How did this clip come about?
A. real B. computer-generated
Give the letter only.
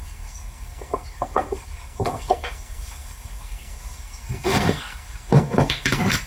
B